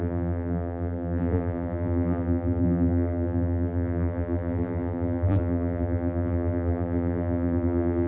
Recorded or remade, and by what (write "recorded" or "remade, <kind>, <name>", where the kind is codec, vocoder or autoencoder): remade, vocoder, BigVGAN v2